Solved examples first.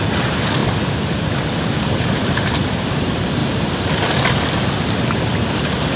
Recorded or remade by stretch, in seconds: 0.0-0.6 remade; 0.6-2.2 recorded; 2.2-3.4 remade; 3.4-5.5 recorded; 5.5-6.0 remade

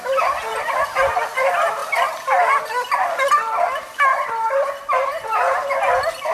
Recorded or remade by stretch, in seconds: 0.0-4.1 recorded; 4.1-4.7 remade; 4.7-6.3 recorded

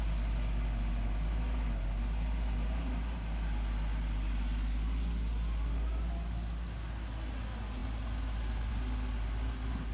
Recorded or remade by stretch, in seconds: 0.0-9.9 recorded

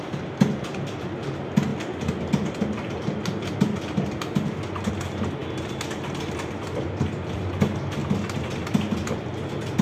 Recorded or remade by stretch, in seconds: 0.0-5.4 recorded; 5.4-7.4 remade; 7.4-9.8 recorded